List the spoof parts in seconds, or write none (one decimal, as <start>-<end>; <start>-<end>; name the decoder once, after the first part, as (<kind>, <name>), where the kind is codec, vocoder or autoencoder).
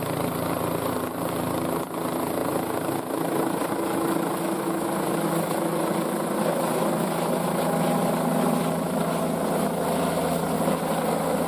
none